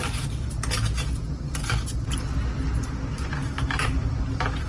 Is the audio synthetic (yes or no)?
no